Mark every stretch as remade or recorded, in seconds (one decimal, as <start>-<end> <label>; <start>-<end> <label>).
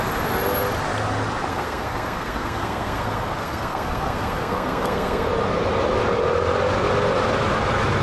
0.0-1.5 recorded; 1.5-5.3 remade; 5.3-8.0 recorded